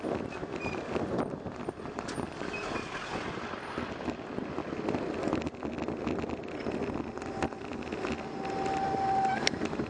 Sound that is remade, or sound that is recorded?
recorded